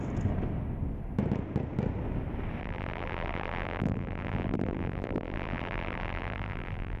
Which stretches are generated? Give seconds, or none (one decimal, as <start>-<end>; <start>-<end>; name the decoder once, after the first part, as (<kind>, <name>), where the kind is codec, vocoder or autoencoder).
2.6-7.0 (vocoder, BigVGAN v2)